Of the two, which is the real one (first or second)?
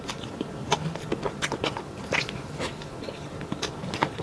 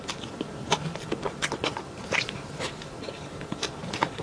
first